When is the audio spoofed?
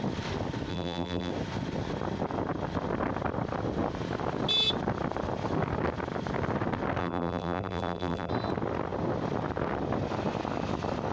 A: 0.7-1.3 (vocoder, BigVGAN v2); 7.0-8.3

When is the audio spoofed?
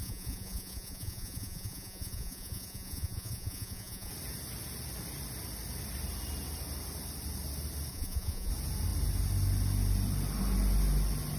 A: 0.0-4.1 (vocoder, Vocos); 7.9-8.5